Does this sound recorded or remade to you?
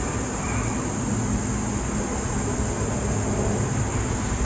recorded